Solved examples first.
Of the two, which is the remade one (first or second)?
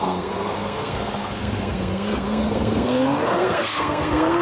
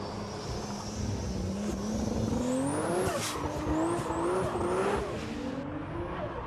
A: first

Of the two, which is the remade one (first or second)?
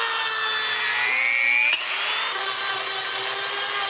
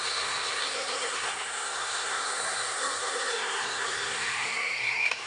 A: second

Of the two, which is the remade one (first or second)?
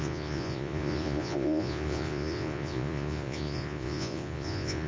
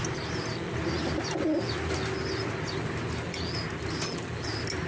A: first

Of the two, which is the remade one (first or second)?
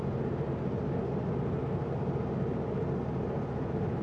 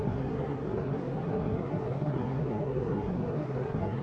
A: second